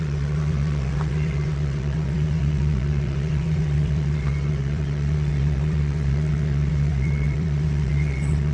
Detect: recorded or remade remade